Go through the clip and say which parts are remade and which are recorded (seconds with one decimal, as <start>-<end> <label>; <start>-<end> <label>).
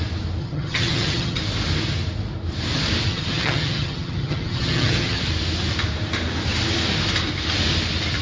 0.0-0.4 recorded; 0.4-1.4 remade; 1.4-3.1 recorded; 3.1-5.2 remade; 5.2-8.2 recorded